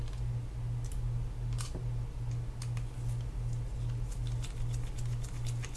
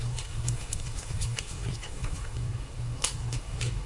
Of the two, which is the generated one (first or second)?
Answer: second